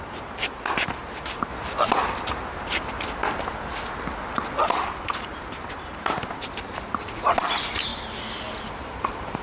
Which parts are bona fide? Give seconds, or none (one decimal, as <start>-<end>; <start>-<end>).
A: 1.5-4.7; 7.9-8.6